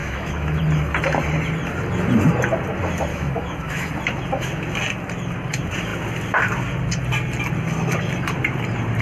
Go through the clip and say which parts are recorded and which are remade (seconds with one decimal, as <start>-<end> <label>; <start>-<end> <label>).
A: 0.0-0.6 remade; 0.6-3.1 recorded; 3.1-3.9 remade; 3.9-9.0 recorded